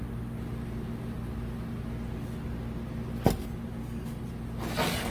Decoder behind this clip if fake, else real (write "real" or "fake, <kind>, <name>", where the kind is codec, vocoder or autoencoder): real